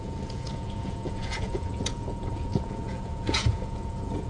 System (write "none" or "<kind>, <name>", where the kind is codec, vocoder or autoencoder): vocoder, Vocos